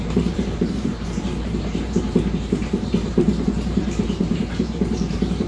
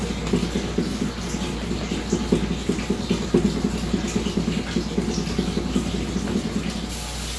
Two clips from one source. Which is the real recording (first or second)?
second